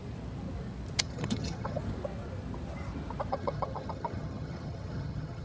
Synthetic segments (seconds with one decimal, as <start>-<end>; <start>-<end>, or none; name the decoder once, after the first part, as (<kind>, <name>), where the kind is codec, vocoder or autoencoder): 1.0-1.8 (vocoder, HiFi-GAN); 3.3-5.4